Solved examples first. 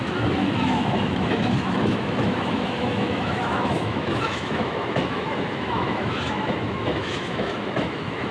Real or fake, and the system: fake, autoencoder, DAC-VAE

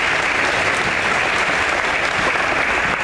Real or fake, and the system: real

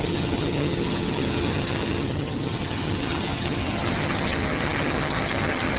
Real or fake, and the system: fake, vocoder, HiFi-GAN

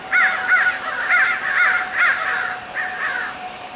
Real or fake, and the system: real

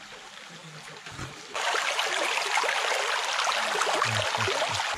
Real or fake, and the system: real